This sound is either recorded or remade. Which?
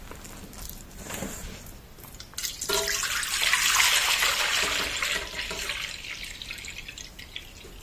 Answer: recorded